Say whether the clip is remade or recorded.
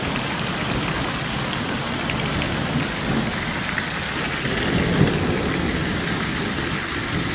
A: recorded